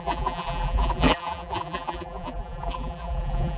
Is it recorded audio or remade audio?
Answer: remade